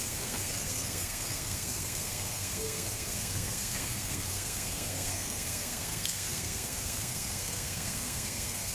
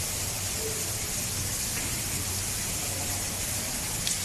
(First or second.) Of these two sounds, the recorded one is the second